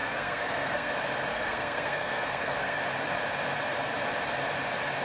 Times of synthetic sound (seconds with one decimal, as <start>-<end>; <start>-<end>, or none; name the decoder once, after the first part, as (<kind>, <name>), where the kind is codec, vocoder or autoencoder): 0.0-0.9 (codec, SNAC); 1.3-2.8